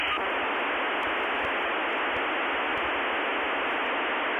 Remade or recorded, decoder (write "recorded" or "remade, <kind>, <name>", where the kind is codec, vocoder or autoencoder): recorded